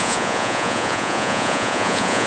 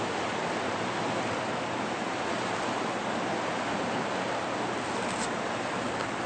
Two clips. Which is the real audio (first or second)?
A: second